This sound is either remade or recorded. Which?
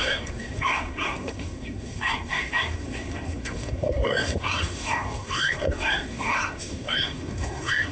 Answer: remade